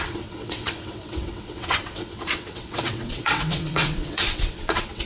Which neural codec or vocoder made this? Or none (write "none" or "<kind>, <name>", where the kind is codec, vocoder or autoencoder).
vocoder, WaveNeXt